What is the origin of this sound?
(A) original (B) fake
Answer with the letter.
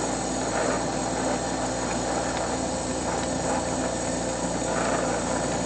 A